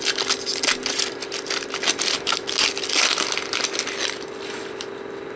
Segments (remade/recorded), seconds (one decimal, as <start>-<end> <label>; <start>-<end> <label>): 0.0-5.4 recorded